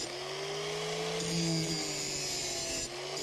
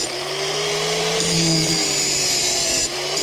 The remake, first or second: second